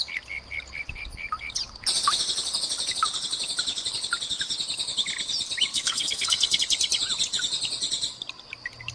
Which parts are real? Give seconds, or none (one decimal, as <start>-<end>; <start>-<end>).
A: 0.0-5.7; 6.6-8.9